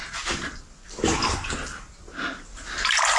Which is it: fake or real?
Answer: real